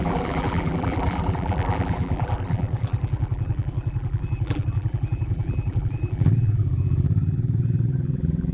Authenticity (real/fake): fake